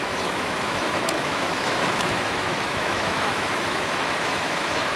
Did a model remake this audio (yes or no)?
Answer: yes